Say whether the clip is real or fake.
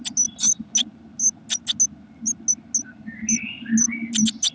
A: real